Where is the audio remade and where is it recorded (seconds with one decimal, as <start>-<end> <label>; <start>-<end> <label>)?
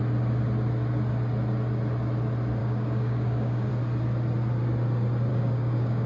0.0-2.6 recorded; 2.6-3.7 remade; 3.7-5.3 recorded; 5.3-6.1 remade